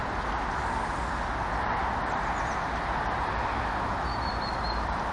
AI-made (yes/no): no